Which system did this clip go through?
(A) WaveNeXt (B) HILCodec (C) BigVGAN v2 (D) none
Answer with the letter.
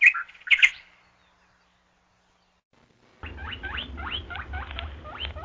D